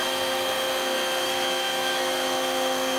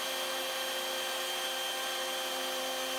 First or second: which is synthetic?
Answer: first